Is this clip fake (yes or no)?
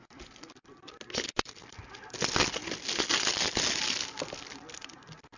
no